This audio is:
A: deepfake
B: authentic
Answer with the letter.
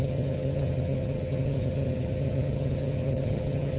A